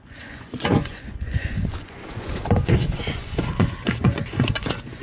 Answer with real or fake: fake